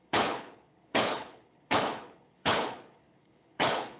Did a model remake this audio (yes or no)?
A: yes